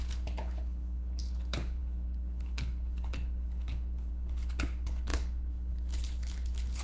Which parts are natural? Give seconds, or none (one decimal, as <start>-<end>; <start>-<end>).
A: none